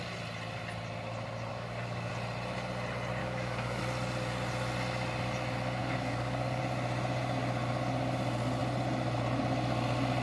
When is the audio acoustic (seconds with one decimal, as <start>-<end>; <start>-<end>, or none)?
0.0-1.5; 2.1-3.2; 3.8-5.8; 6.6-10.2